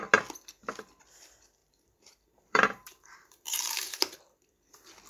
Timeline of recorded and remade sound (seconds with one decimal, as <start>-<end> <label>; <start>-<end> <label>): 0.0-1.6 recorded; 1.6-4.2 remade; 4.2-5.1 recorded